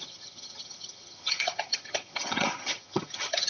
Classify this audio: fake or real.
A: fake